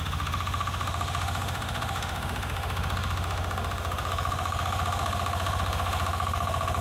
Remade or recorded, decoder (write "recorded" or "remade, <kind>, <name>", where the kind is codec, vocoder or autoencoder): remade, autoencoder, DAC-VAE